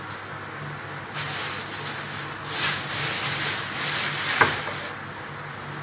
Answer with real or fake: real